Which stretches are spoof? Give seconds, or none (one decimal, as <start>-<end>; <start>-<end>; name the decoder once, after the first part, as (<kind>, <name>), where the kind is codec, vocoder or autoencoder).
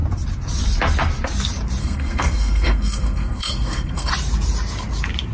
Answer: 1.8-4.1 (codec, SNAC)